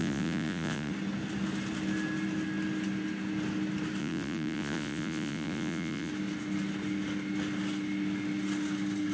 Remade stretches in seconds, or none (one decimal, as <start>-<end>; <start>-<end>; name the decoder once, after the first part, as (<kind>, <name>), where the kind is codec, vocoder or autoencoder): 0.0-0.9 (vocoder, Vocos); 4.0-6.1